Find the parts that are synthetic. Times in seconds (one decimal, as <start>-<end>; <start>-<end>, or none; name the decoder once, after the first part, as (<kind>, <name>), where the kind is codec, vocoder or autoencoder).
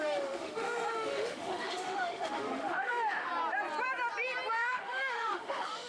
0.0-3.3 (autoencoder, DAC-VAE); 4.5-5.9